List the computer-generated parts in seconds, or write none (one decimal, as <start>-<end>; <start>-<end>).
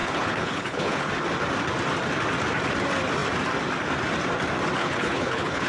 0.0-1.1; 4.8-5.7